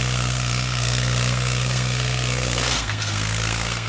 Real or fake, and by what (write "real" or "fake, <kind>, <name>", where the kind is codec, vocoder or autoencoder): fake, codec, SNAC